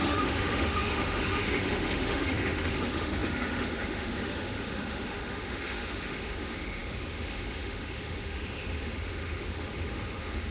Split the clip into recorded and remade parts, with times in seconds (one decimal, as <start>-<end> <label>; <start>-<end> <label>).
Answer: 0.0-10.5 remade